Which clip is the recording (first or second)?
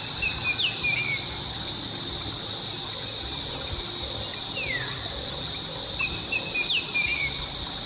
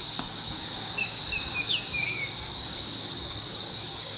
first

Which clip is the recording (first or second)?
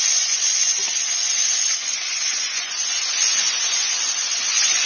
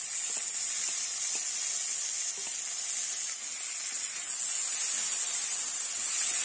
second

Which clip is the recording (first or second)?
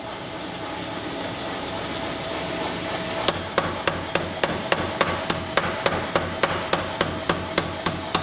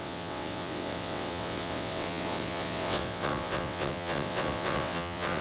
first